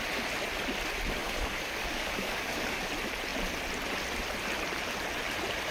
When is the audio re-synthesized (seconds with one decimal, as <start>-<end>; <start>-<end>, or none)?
1.2-2.9